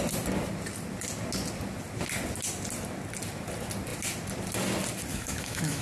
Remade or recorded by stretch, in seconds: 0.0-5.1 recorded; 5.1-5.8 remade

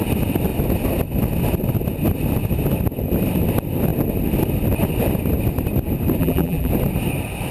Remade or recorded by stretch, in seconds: 0.0-6.2 recorded; 6.2-6.7 remade; 6.7-7.5 recorded

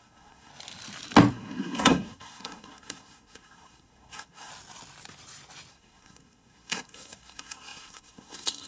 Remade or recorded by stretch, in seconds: 0.0-0.5 remade; 0.5-1.3 recorded; 1.3-4.5 remade; 4.5-5.7 recorded; 5.7-8.7 remade